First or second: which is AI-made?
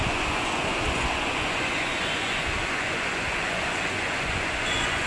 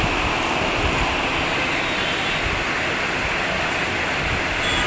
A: first